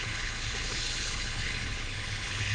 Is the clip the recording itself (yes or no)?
no